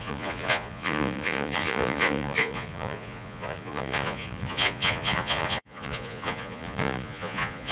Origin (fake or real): fake